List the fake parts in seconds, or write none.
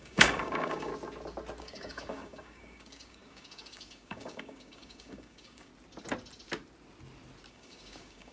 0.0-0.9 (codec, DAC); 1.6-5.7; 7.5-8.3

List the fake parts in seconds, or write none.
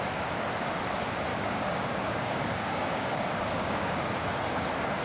1.3-4.3 (codec, DAC)